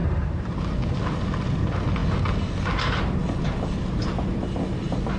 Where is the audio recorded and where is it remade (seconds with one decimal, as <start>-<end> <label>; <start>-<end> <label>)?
0.0-0.6 remade; 0.6-5.2 recorded